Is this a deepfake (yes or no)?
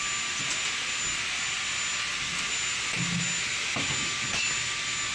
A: no